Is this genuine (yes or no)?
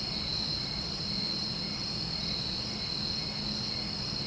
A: yes